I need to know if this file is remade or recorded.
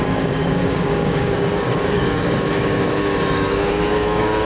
remade